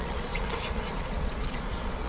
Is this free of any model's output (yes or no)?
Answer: no